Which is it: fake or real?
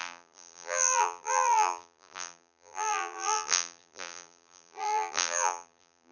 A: fake